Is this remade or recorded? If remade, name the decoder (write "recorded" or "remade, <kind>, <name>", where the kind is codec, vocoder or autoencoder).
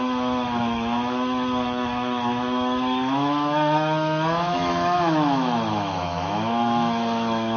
remade, autoencoder, DAC-VAE